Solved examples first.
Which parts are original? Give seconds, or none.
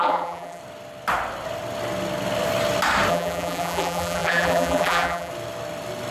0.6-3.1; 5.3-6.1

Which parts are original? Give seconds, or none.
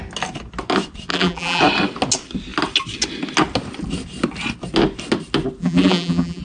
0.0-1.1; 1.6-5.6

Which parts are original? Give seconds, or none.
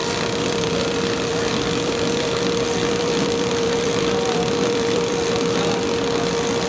0.7-1.3; 5.3-6.7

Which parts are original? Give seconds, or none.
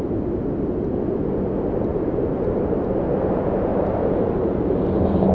0.0-1.9; 2.8-3.7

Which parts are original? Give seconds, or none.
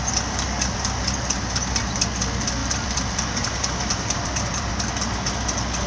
0.0-2.6; 4.7-5.9